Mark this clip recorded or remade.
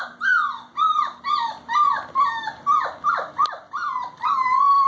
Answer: recorded